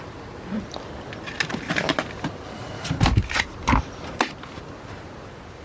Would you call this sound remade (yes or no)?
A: no